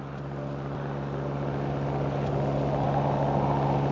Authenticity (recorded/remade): recorded